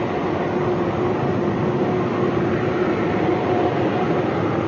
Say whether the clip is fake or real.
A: real